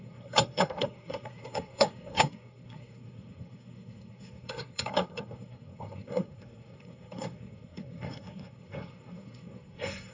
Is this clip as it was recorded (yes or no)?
no